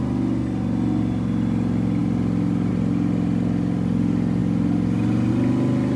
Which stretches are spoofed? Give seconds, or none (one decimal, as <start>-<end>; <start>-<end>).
none